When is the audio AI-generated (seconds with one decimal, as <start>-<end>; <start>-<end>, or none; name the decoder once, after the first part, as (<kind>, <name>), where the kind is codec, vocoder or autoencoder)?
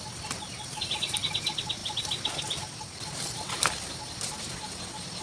none